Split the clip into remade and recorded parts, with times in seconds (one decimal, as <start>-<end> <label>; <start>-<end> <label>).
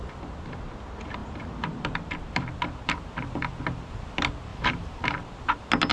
0.0-1.2 recorded; 1.2-3.6 remade; 3.6-4.5 recorded; 4.5-5.3 remade; 5.3-5.9 recorded